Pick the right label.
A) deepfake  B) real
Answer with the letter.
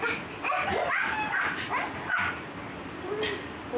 B